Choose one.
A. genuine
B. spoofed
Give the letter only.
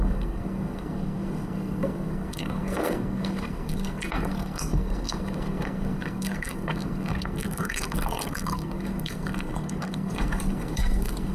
B